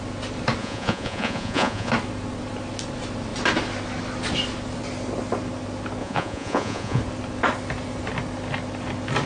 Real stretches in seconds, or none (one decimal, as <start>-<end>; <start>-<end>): 0.0-0.6; 1.9-6.0; 7.0-9.3